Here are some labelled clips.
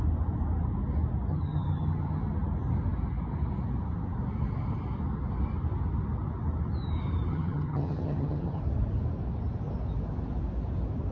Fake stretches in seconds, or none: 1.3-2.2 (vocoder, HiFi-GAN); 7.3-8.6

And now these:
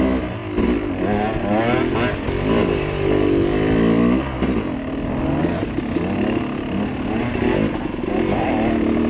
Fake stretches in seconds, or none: none

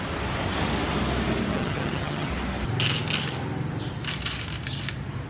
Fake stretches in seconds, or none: 1.5-2.3 (vocoder, HiFi-GAN)

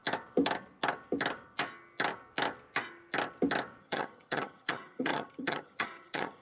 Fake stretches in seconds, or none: 3.8-6.4 (vocoder, HiFi-GAN)

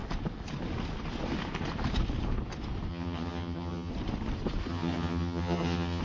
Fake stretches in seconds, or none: 2.9-3.9 (vocoder, HiFi-GAN); 4.7-6.0

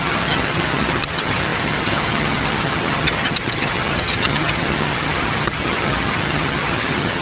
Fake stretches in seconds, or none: 0.0-7.2 (vocoder, HiFi-GAN)